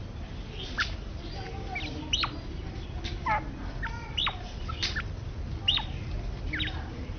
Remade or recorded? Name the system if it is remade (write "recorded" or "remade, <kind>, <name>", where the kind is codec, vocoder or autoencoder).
recorded